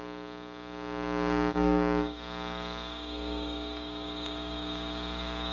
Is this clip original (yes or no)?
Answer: no